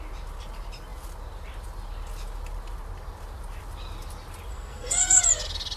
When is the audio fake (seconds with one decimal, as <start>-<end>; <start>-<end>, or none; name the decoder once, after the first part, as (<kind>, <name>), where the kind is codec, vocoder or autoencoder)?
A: 4.5-5.2 (codec, SNAC)